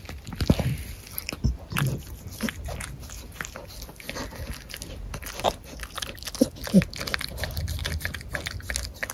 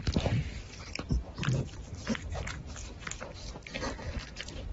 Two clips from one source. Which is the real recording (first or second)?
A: first